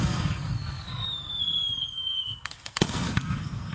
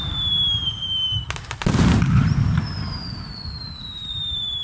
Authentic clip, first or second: second